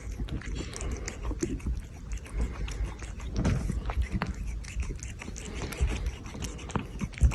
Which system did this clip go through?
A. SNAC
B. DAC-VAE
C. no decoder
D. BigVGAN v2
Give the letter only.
C